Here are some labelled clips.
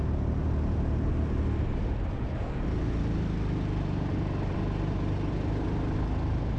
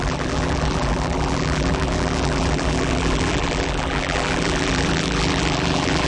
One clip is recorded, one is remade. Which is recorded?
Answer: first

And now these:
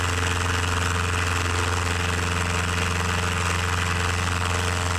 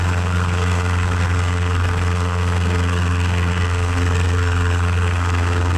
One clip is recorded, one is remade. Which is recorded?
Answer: first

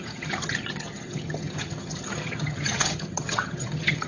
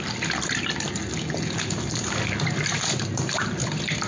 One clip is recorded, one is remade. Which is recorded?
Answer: second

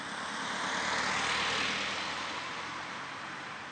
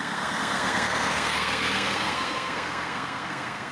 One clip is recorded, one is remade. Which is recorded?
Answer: first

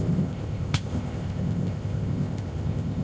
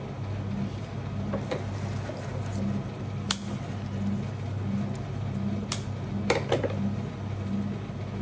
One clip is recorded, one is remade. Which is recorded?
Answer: second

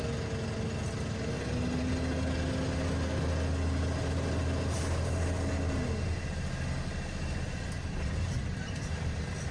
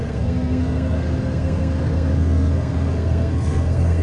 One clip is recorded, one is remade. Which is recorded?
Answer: first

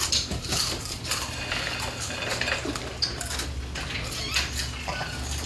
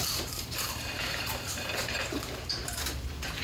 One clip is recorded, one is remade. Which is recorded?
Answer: first